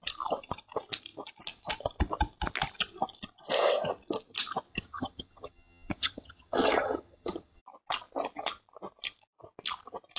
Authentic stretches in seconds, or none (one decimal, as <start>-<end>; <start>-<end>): 0.0-4.7; 7.6-10.2